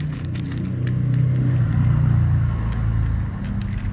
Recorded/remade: recorded